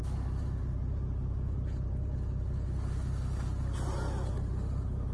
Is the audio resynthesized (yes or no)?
no